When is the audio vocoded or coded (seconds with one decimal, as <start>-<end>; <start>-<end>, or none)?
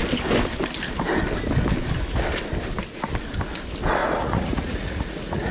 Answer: 4.0-5.5